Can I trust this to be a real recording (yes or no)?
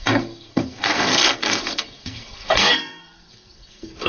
no